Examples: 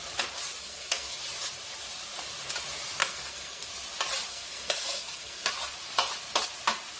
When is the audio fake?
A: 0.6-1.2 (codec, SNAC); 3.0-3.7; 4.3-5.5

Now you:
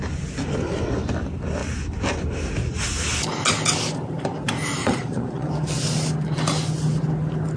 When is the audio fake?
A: 4.8-5.5 (vocoder, Vocos)

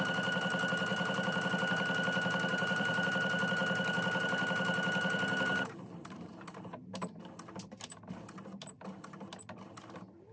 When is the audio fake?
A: 0.9-1.5 (vocoder, BigVGAN v2); 2.5-3.1; 5.5-7.2

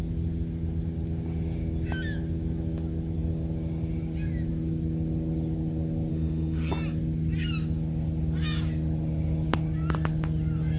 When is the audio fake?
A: 6.1-6.7 (autoencoder, DAC-VAE)

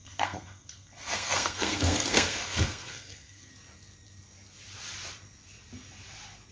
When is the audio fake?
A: 0.0-3.5 (codec, SNAC)

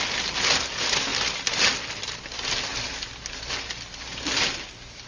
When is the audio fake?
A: none